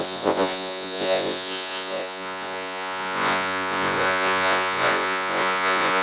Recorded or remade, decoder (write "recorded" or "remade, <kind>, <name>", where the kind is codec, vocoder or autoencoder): remade, vocoder, Vocos